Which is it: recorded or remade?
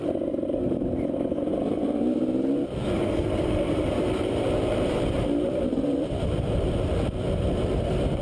remade